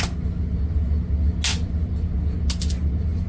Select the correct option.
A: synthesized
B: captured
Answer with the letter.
B